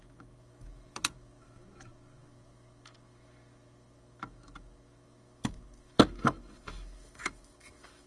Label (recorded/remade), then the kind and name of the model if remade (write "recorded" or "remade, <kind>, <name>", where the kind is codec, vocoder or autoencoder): remade, autoencoder, DAC-VAE